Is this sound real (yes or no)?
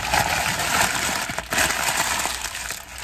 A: yes